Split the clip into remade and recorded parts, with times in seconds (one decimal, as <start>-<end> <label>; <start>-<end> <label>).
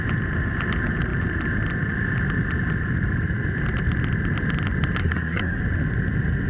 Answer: 0.0-5.0 recorded; 5.0-5.6 remade; 5.6-6.5 recorded